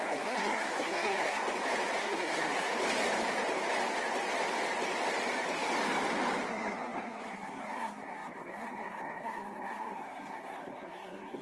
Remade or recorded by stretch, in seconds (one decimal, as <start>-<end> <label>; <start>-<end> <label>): 0.0-1.4 remade; 1.4-2.0 recorded; 2.0-2.7 remade; 2.7-6.5 recorded; 6.5-11.4 remade